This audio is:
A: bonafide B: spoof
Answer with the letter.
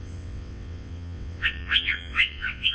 B